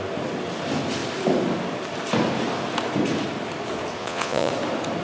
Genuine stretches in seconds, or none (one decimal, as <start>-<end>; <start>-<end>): 0.0-4.0; 4.5-5.0